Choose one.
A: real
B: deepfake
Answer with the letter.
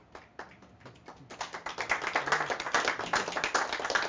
A